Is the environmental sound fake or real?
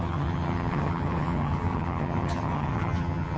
fake